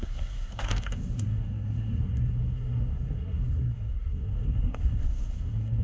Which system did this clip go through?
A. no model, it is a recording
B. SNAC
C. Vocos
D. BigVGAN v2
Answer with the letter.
B